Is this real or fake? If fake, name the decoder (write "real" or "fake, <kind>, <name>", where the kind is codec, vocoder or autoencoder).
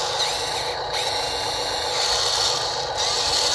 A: real